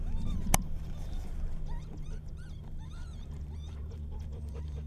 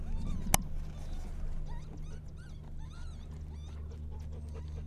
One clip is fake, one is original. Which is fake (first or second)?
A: first